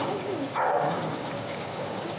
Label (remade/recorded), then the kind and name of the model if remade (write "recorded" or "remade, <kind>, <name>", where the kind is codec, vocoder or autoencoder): remade, codec, DAC